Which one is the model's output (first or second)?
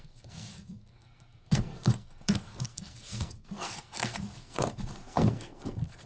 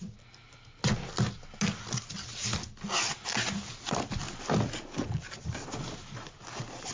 first